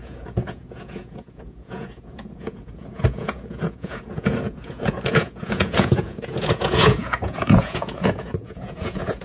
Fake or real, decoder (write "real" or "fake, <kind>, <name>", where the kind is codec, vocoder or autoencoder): fake, vocoder, Vocos